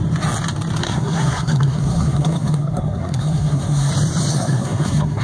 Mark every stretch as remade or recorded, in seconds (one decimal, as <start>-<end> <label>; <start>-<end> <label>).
0.0-0.8 recorded; 0.8-3.9 remade; 3.9-4.3 recorded; 4.3-5.2 remade